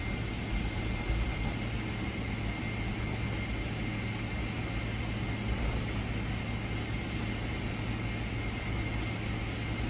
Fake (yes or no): no